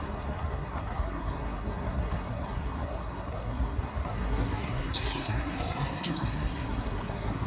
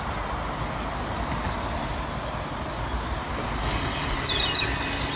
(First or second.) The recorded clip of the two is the second